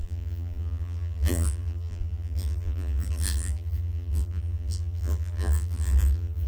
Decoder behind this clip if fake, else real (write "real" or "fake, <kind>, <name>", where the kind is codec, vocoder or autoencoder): fake, vocoder, BigVGAN v2